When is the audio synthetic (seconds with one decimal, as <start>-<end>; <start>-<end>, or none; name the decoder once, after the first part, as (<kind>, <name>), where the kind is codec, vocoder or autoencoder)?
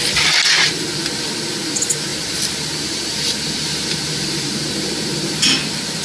2.1-5.5 (vocoder, BigVGAN v2)